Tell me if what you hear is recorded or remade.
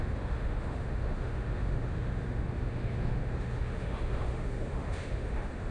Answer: remade